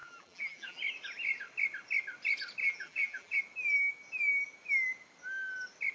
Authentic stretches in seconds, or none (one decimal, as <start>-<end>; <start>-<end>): 0.8-2.6; 3.4-5.9